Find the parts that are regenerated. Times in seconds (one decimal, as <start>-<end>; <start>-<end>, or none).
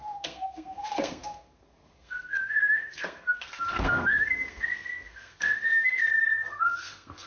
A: 0.0-7.3